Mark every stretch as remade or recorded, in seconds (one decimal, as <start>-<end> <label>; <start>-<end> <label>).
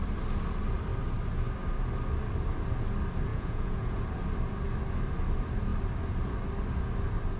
0.0-3.3 recorded; 3.3-4.0 remade; 4.0-7.4 recorded